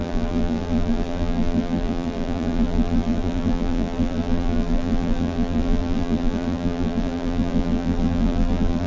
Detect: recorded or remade remade